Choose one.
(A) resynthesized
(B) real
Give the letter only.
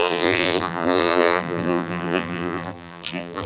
A